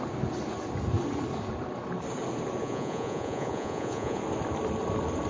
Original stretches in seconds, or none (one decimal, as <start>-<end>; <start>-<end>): 0.0-2.6; 4.2-5.3